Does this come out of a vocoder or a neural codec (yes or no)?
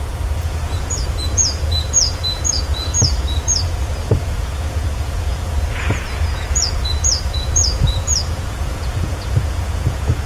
yes